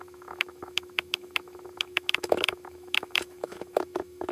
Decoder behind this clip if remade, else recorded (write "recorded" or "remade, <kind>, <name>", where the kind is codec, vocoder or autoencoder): remade, autoencoder, DAC-VAE